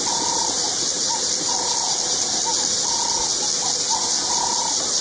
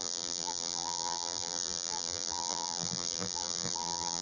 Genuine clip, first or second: first